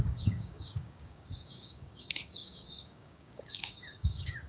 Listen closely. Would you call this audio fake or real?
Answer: fake